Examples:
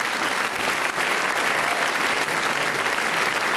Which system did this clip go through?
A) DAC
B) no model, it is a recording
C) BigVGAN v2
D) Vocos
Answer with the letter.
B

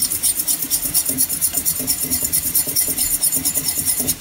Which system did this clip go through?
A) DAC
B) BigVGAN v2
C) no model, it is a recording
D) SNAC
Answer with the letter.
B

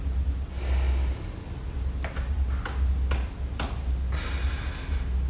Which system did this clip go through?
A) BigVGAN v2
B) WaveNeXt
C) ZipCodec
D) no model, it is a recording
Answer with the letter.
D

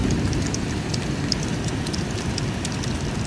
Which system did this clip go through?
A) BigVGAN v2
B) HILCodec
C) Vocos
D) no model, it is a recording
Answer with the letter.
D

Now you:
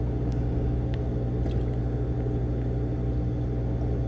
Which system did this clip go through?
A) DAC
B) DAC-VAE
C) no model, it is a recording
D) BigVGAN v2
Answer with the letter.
C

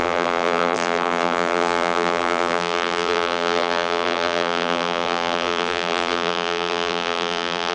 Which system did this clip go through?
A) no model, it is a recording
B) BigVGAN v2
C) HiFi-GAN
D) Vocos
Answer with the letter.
B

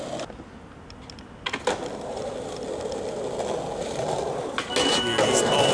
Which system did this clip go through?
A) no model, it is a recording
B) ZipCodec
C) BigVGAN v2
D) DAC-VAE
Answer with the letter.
A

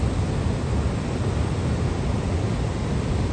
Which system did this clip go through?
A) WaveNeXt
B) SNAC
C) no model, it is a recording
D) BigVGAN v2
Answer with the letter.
C